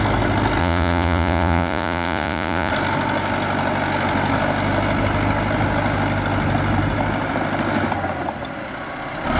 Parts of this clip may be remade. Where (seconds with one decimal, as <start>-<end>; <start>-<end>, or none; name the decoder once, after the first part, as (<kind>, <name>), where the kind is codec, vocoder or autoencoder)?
0.6-2.7 (vocoder, Vocos)